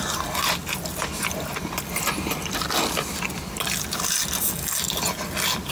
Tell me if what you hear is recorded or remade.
recorded